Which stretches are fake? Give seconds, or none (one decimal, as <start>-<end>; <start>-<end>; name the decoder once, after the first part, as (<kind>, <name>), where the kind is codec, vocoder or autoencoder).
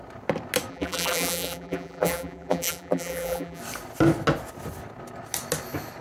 0.7-3.6 (vocoder, BigVGAN v2)